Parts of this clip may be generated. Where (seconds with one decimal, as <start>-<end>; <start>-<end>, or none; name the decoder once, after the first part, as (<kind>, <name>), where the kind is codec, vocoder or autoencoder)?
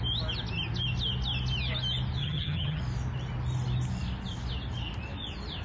2.2-2.8 (vocoder, HiFi-GAN)